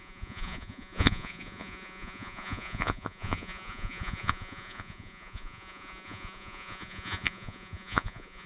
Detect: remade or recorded remade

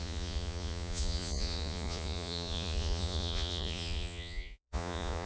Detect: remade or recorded remade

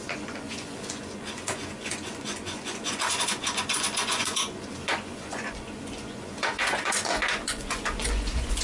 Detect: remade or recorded remade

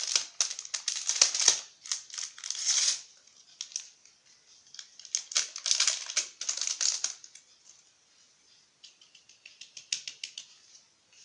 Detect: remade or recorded recorded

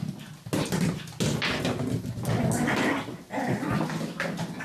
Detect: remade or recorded recorded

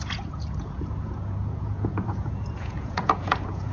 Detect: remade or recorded remade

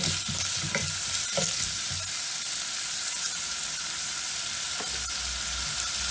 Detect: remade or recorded recorded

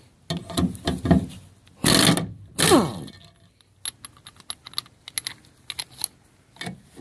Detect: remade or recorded recorded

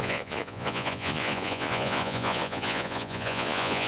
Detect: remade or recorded remade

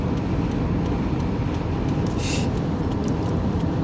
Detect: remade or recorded recorded